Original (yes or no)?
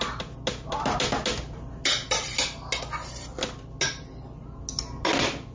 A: yes